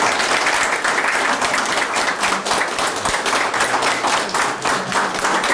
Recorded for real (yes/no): yes